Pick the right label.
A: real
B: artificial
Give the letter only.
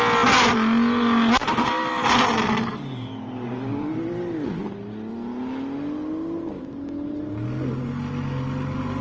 A